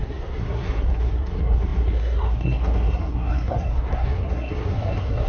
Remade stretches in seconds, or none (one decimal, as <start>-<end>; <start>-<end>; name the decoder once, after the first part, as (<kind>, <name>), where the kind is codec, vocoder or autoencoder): 0.0-5.3 (codec, SNAC)